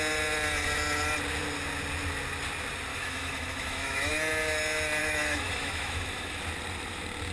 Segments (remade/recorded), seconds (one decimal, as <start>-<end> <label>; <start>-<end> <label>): 0.0-2.9 recorded; 2.9-4.1 remade; 4.1-5.0 recorded; 5.0-6.4 remade; 6.4-7.3 recorded